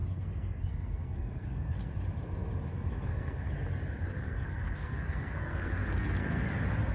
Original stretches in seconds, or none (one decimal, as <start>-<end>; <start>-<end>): 1.9-2.7; 3.5-4.2; 6.5-6.9